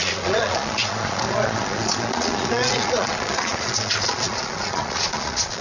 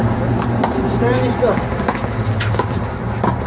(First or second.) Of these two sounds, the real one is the second